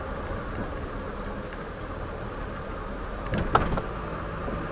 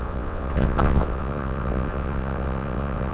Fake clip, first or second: second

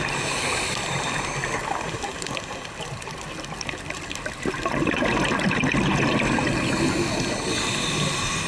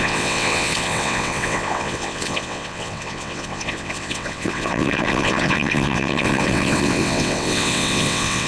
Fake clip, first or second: second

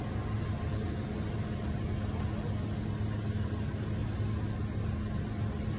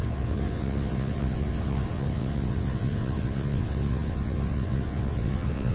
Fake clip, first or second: second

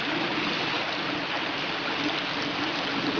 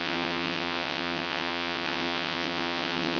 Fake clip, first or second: second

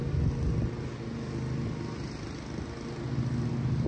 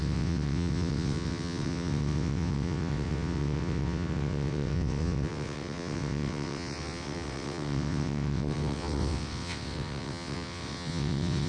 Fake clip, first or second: second